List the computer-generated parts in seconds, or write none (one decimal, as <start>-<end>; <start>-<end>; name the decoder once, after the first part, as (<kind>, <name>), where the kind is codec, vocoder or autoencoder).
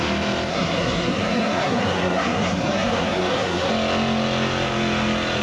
0.5-3.7 (codec, SNAC)